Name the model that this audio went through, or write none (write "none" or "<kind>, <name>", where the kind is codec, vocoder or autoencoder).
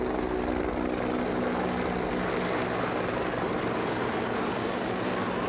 none